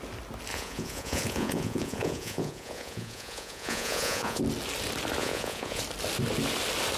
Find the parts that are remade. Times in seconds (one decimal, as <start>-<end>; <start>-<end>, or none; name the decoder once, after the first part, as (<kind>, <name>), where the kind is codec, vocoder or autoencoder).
0.5-4.4 (vocoder, Vocos); 5.2-5.8